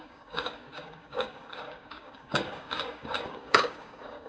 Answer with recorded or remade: remade